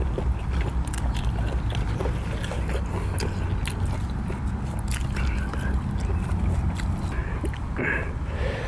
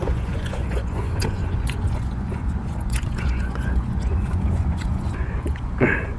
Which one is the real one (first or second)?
first